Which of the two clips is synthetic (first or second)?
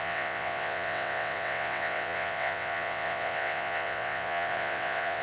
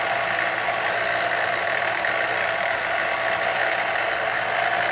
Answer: first